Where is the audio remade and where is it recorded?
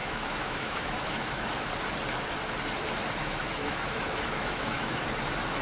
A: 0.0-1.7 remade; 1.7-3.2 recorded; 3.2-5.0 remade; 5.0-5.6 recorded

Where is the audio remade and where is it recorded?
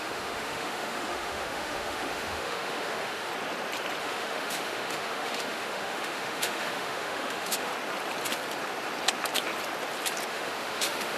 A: 0.0-3.3 remade; 3.3-4.0 recorded; 4.0-7.7 remade; 7.7-10.3 recorded; 10.3-11.2 remade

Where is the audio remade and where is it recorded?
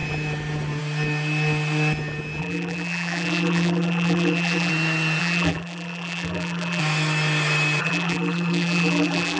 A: 0.0-2.4 recorded; 2.4-4.7 remade; 4.7-5.2 recorded; 5.2-6.8 remade; 6.8-7.8 recorded; 7.8-9.4 remade